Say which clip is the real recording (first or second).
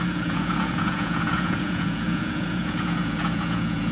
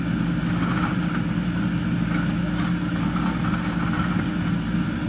second